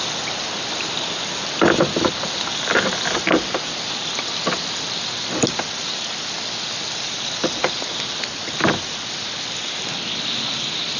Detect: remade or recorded recorded